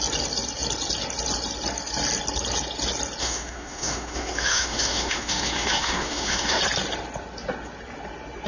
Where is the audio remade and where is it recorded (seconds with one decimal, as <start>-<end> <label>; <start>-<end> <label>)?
0.0-3.2 recorded; 3.2-6.6 remade; 6.6-8.5 recorded